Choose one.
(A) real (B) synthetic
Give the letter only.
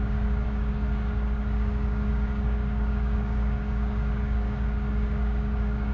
B